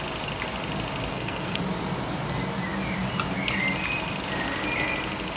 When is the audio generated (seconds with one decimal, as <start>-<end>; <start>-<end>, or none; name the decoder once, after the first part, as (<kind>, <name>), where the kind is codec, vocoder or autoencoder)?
1.1-1.6 (codec, SNAC)